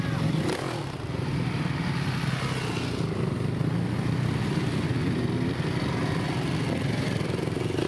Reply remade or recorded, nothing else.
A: recorded